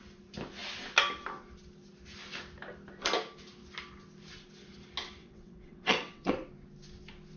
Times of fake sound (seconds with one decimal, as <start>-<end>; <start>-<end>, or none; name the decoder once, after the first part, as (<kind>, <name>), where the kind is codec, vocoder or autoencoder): 5.2-6.3 (vocoder, WaveNeXt)